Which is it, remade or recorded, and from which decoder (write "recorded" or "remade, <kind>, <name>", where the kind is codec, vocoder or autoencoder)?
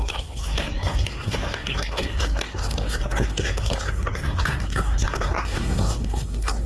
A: remade, codec, SNAC